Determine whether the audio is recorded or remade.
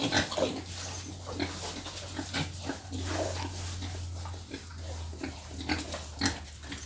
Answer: recorded